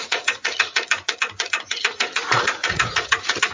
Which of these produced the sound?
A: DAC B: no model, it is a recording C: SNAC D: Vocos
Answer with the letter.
D